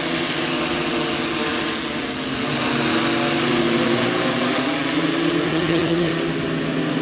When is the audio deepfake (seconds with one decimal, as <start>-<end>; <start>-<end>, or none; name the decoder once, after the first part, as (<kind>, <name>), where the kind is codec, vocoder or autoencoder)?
5.5-6.1 (vocoder, HiFi-GAN)